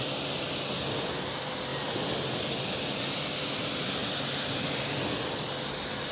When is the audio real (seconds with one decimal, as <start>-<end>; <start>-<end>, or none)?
0.0-6.1